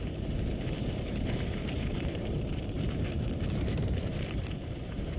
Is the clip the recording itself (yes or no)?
no